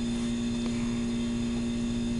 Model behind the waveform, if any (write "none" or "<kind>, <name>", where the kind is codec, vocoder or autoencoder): none